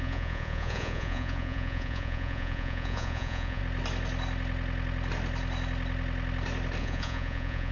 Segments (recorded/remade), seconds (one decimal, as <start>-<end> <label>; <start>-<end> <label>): 0.0-3.6 remade; 3.6-6.8 recorded; 6.8-7.7 remade

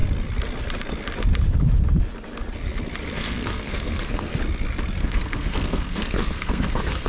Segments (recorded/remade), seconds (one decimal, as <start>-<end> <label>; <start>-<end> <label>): 0.0-3.2 recorded; 3.2-4.3 remade; 4.3-5.0 recorded; 5.0-7.1 remade

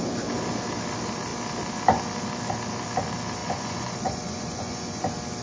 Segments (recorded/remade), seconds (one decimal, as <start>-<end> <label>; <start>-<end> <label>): 0.0-3.4 recorded; 3.4-5.0 remade; 5.0-5.4 recorded

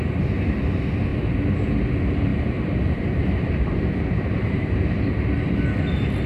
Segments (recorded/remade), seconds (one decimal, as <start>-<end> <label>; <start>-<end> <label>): 0.0-2.3 recorded; 2.3-5.1 remade; 5.1-6.3 recorded

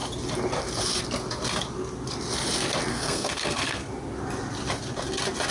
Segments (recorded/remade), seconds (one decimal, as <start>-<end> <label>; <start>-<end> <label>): 0.0-2.9 recorded; 2.9-3.9 remade; 3.9-5.5 recorded

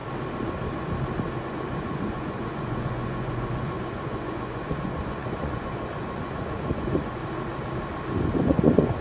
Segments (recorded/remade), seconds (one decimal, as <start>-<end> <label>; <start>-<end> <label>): 0.0-1.4 recorded; 1.4-7.2 remade; 7.2-8.4 recorded; 8.4-9.0 remade

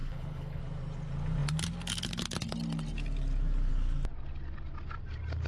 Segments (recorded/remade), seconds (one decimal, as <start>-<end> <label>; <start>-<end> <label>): 0.0-0.6 remade; 0.6-5.5 recorded

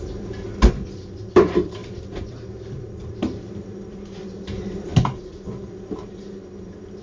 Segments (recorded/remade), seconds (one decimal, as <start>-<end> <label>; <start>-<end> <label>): 0.0-4.9 remade; 4.9-7.0 recorded